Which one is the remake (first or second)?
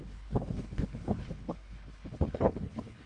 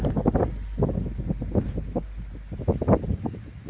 first